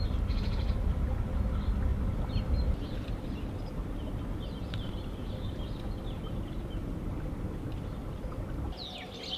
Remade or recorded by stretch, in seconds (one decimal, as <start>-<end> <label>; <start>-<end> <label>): 0.0-9.4 recorded